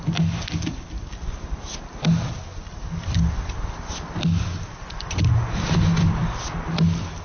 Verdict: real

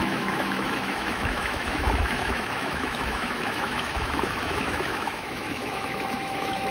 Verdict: fake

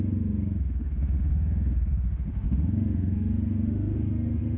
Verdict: fake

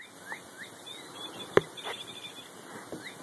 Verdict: real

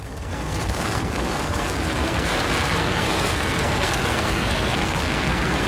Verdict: fake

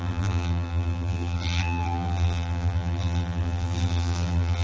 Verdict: fake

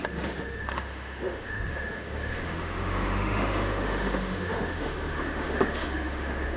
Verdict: fake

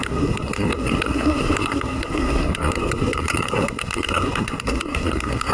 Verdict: fake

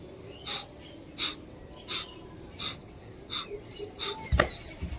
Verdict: real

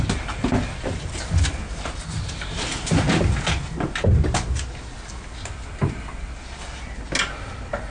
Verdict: real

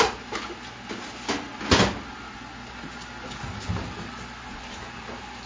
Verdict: real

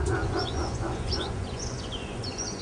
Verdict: fake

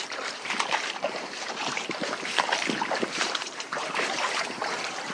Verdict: fake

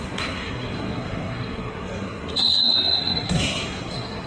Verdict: fake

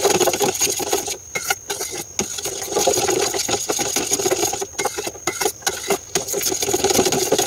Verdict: real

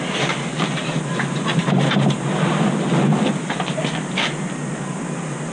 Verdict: real